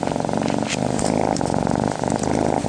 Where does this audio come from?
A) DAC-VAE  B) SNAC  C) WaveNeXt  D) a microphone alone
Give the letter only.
D